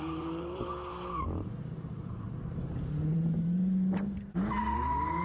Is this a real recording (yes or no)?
no